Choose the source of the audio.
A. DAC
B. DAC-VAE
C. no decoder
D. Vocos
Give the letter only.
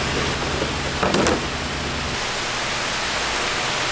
C